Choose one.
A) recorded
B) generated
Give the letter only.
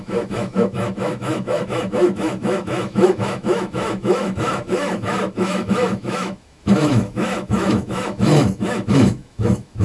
B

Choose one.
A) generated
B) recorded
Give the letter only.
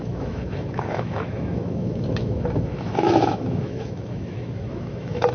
A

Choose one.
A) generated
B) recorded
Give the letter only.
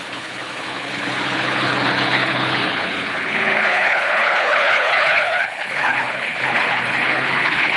A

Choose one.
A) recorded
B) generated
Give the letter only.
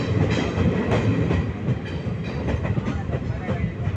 A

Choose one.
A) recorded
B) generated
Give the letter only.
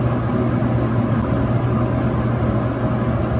A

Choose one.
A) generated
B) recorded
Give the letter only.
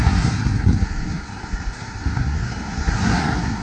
A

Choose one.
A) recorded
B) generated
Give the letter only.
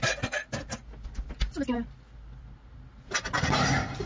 A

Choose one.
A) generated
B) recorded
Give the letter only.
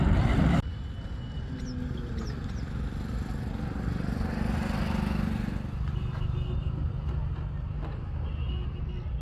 B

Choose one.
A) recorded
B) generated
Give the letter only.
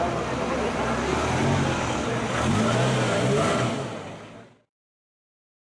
A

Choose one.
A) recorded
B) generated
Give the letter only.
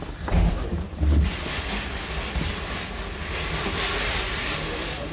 A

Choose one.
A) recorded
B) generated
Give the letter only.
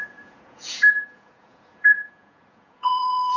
B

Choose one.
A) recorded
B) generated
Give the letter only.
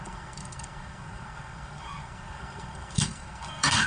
B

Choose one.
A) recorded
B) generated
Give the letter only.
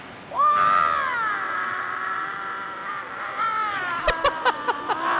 A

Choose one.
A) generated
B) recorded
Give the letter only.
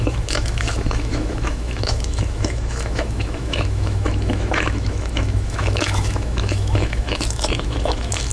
A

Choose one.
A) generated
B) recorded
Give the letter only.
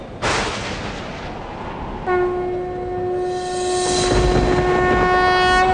B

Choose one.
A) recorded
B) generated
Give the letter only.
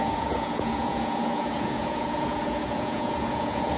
B